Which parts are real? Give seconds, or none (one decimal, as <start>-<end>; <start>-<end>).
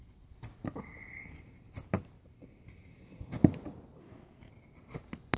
0.0-4.0; 4.5-5.4